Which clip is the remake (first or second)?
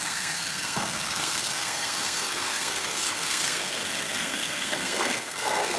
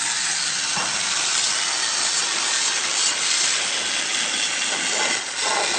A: first